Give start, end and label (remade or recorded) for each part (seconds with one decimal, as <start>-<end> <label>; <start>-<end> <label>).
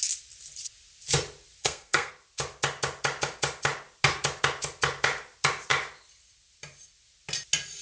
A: 0.0-1.6 recorded; 1.6-2.1 remade; 2.1-7.8 recorded